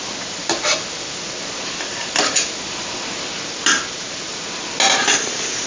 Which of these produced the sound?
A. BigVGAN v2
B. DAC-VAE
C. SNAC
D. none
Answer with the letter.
D